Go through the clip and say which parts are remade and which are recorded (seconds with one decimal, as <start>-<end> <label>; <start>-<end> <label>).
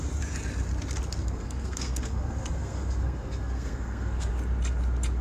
0.0-1.2 recorded; 1.2-4.3 remade; 4.3-5.2 recorded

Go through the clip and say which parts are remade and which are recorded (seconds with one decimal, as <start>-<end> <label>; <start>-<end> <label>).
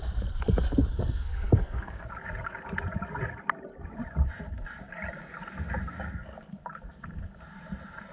0.0-0.9 recorded; 0.9-2.1 remade; 2.1-8.1 recorded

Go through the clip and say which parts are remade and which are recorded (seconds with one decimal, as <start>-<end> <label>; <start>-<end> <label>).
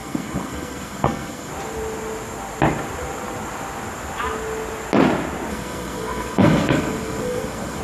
0.0-1.5 remade; 1.5-5.5 recorded; 5.5-7.8 remade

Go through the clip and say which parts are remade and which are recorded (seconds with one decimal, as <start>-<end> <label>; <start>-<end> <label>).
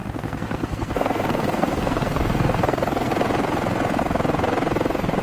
0.0-3.1 remade; 3.1-5.2 recorded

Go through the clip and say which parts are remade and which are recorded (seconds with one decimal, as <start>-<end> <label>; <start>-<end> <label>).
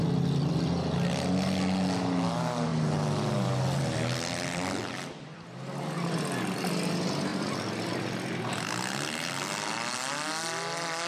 0.0-11.1 recorded